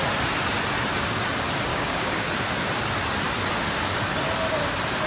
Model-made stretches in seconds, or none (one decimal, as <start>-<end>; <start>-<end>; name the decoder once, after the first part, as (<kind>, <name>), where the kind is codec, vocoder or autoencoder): 1.7-2.3 (codec, DAC)